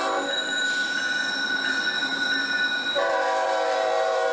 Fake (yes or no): yes